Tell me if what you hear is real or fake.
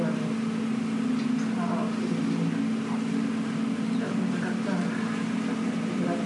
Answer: real